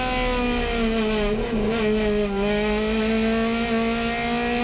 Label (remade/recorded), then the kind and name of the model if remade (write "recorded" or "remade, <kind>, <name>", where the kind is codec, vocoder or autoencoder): recorded